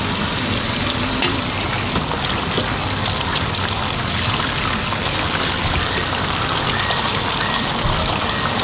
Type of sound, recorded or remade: recorded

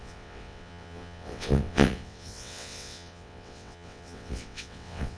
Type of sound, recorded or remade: remade